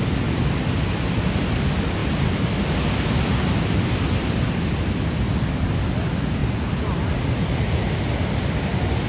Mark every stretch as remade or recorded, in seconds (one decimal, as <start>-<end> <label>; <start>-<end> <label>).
0.0-9.1 recorded